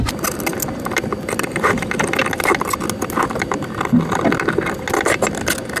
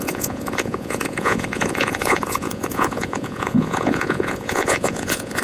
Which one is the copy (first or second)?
second